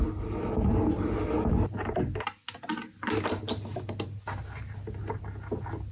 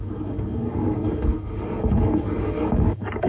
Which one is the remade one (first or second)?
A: second